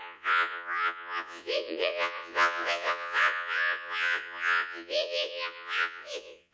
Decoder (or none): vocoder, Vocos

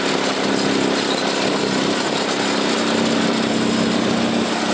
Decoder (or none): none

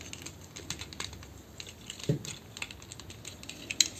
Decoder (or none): none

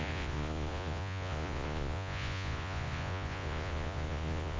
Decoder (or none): vocoder, Vocos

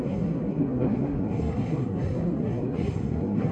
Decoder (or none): codec, SNAC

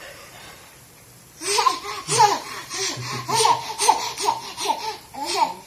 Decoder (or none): vocoder, BigVGAN v2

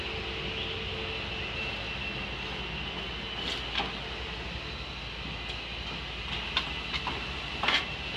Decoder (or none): none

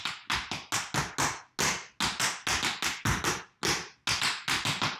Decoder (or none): none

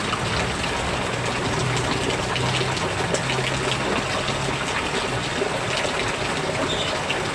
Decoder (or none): none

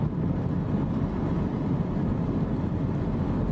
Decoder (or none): none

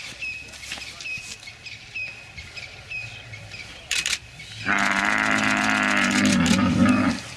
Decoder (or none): none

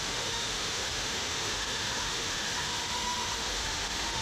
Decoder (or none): autoencoder, DAC-VAE